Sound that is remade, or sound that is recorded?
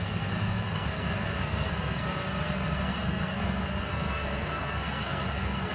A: remade